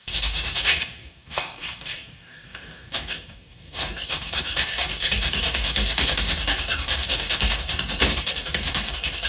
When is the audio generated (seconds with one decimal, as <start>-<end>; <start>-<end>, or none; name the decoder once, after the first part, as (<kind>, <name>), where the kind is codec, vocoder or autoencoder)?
0.0-9.3 (codec, DAC)